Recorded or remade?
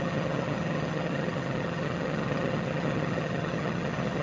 remade